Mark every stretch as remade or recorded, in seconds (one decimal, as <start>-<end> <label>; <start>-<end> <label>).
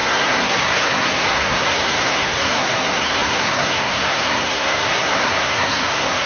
0.0-6.3 remade